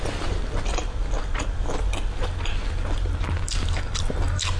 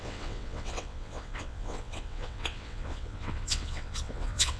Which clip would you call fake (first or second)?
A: second